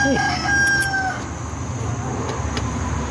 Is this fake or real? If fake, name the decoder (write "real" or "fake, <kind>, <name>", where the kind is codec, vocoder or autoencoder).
real